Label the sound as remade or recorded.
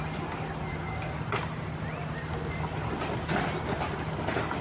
recorded